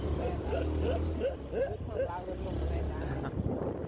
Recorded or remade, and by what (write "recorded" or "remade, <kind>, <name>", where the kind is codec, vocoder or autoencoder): recorded